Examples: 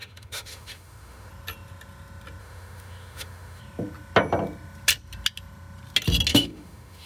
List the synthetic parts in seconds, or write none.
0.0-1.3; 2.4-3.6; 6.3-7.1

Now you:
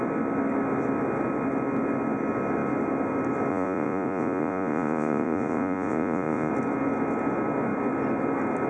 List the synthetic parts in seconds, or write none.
3.5-6.5

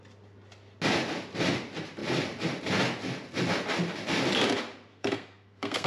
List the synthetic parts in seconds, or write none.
4.9-5.9

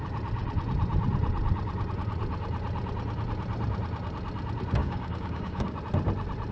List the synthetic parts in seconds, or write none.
4.8-5.8